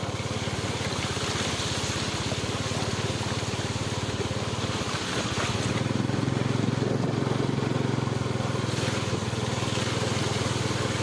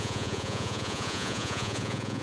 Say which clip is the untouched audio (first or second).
first